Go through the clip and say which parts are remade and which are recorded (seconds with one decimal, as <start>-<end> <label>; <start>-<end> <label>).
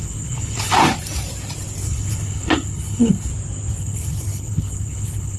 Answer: 0.0-0.8 remade; 0.8-1.8 recorded; 1.8-3.3 remade; 3.3-3.8 recorded; 3.8-5.4 remade